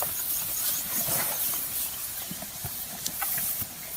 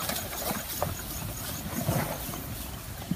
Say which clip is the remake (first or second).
first